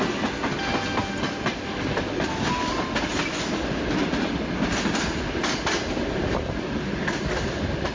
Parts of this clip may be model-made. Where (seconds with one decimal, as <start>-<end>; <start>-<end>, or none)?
none